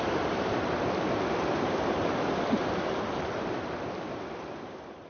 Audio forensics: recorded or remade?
remade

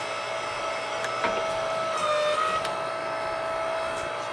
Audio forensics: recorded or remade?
recorded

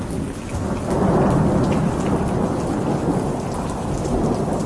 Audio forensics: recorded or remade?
recorded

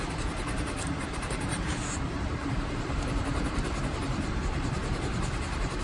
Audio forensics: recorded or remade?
remade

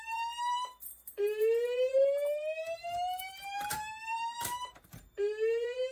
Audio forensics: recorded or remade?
remade